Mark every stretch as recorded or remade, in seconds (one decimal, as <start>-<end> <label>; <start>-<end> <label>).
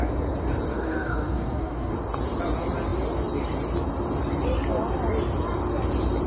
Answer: 0.0-0.7 recorded; 0.7-1.9 remade; 1.9-6.3 recorded